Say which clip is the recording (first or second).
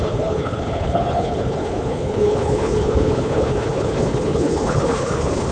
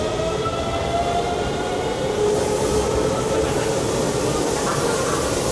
second